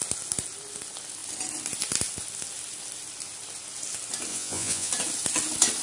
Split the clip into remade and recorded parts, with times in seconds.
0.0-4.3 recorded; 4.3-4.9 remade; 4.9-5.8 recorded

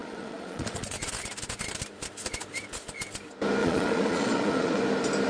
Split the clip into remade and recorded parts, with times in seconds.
0.0-1.1 remade; 1.1-3.6 recorded; 3.6-4.8 remade; 4.8-5.3 recorded

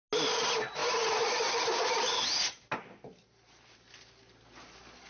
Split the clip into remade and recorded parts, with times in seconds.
0.0-5.1 recorded